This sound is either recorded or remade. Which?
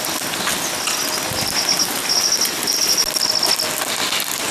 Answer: recorded